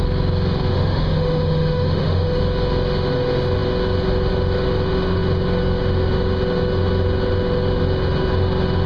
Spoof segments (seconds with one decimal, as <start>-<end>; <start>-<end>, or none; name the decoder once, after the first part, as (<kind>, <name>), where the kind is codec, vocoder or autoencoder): 0.7-2.4 (autoencoder, DAC-VAE)